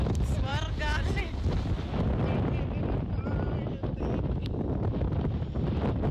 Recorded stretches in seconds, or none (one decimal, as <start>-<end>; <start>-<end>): 0.0-6.1